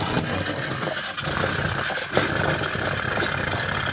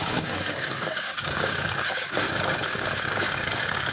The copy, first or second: second